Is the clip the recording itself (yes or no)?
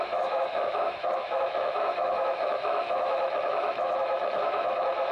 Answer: no